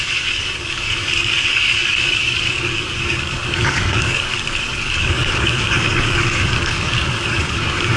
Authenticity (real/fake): fake